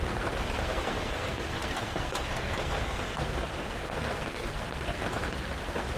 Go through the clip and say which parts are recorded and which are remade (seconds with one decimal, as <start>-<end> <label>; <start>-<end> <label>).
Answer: 0.0-6.0 remade